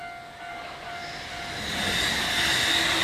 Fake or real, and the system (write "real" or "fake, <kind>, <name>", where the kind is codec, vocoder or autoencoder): real